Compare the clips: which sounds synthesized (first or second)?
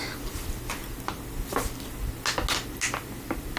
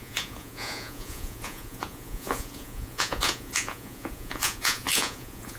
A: second